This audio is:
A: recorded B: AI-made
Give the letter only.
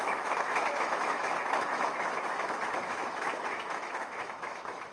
B